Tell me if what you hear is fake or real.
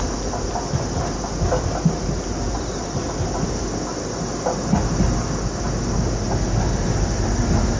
real